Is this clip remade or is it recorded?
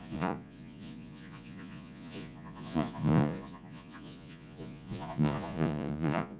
remade